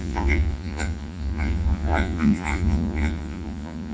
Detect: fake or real fake